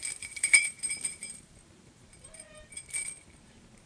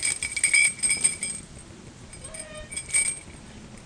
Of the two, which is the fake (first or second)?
first